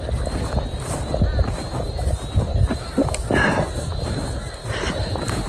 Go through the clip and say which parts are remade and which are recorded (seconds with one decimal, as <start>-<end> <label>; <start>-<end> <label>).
0.0-5.5 recorded